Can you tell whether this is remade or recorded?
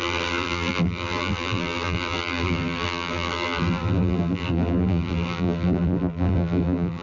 remade